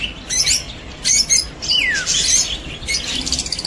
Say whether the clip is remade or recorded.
recorded